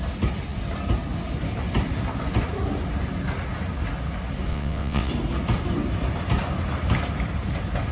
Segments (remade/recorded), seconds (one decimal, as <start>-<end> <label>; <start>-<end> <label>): 0.0-4.5 recorded; 4.5-5.1 remade; 5.1-7.9 recorded